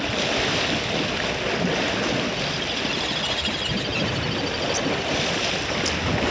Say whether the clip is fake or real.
real